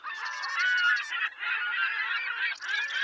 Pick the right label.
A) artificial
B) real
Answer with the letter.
B